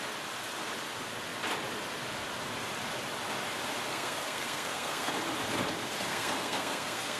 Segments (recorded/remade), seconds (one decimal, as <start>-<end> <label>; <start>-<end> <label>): 0.0-3.9 recorded; 3.9-5.1 remade; 5.1-6.1 recorded; 6.1-7.2 remade